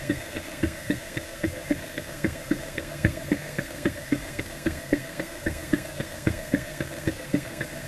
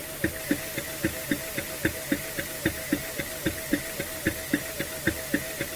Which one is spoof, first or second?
first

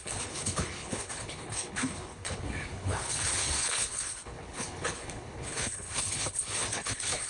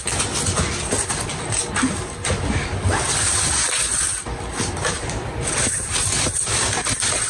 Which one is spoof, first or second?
first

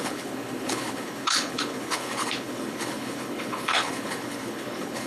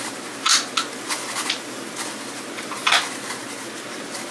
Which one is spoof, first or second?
first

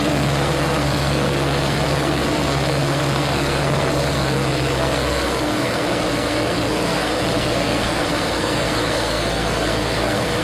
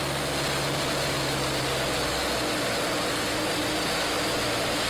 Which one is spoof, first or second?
first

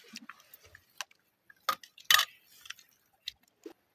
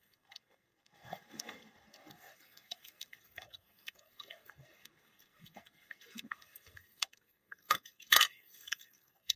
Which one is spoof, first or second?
second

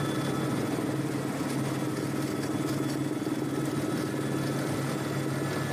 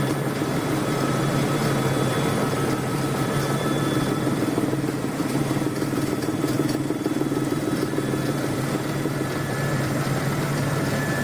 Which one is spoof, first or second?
second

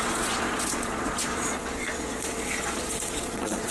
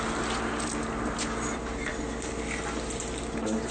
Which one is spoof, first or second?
first